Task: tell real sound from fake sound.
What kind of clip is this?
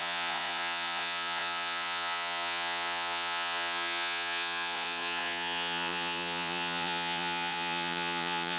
fake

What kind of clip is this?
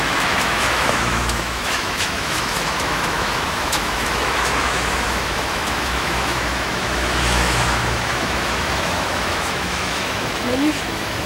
fake